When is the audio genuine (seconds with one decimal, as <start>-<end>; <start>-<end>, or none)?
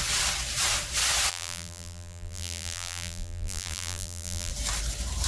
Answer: 0.0-1.3; 4.5-5.3